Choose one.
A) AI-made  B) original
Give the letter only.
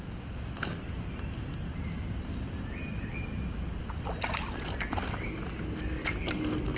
B